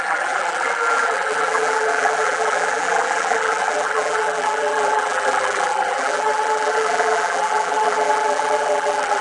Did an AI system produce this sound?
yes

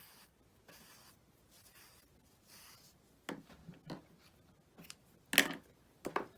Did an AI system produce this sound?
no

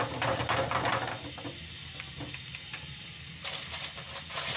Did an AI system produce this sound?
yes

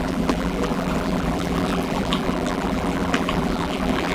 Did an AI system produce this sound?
yes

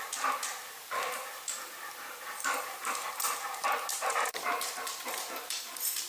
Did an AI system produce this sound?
yes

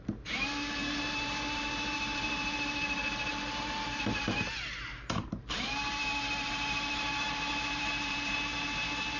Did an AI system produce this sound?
yes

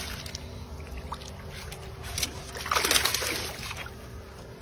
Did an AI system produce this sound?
no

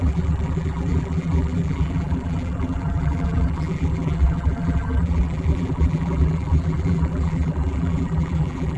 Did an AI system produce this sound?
yes